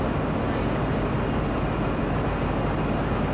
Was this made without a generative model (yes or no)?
yes